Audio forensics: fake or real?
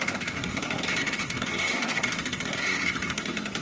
fake